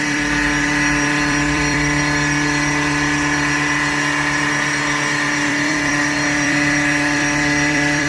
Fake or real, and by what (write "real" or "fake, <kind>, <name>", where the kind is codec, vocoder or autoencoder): fake, vocoder, BigVGAN v2